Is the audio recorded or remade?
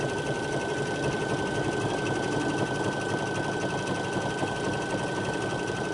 recorded